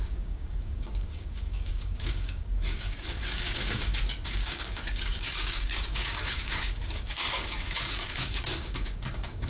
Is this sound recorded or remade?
remade